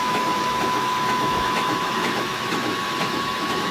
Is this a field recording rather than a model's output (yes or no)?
no